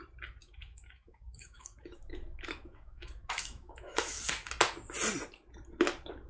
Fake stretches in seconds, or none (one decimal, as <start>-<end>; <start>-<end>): 0.4-4.2